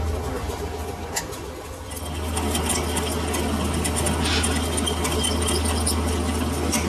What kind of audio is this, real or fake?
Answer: real